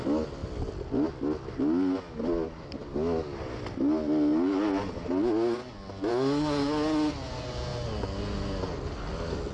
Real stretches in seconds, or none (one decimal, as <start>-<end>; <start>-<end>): 0.0-9.5